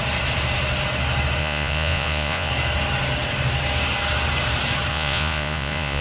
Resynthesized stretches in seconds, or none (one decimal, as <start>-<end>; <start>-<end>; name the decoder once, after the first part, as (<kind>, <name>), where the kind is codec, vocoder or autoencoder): 1.4-2.5 (vocoder, Vocos); 4.9-6.0